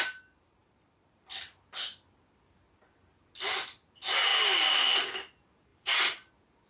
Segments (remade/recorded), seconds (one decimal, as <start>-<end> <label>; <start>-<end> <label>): 0.0-0.6 recorded; 0.6-1.4 remade; 1.4-5.7 recorded; 5.7-6.3 remade; 6.3-6.7 recorded